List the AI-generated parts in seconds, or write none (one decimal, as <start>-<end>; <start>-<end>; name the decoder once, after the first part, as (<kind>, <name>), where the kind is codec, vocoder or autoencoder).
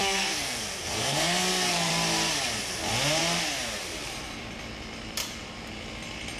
0.0-1.9 (codec, SNAC)